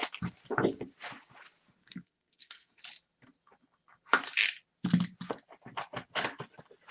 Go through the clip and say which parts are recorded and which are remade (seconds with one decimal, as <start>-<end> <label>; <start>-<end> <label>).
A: 0.0-1.8 recorded; 1.8-2.8 remade; 2.8-6.9 recorded